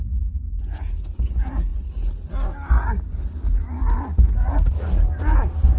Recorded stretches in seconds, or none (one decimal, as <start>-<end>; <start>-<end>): 1.7-5.2